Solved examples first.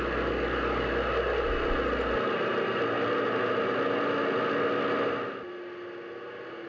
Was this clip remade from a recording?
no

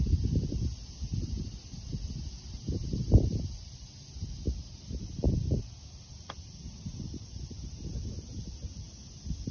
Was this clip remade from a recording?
no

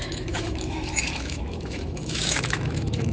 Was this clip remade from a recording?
yes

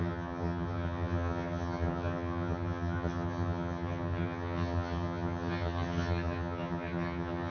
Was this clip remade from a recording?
yes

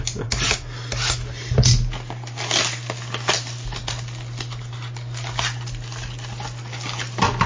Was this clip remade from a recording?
no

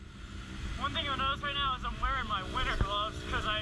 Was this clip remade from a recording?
no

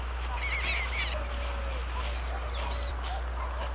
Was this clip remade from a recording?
no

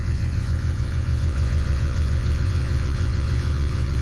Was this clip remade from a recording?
yes